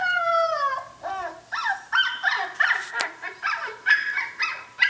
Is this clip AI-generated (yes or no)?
yes